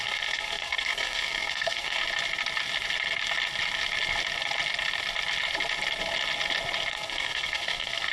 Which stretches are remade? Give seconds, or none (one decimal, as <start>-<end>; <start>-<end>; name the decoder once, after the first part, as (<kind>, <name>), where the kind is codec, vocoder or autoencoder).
0.0-2.0 (codec, SNAC); 6.9-8.1